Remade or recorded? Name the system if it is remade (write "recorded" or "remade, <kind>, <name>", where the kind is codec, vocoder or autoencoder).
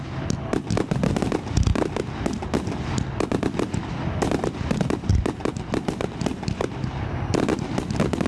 recorded